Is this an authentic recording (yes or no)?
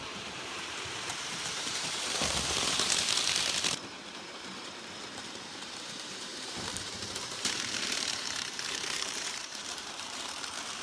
no